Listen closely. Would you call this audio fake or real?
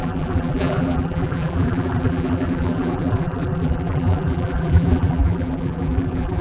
fake